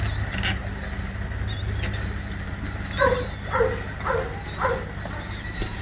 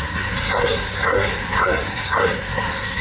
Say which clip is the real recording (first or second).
first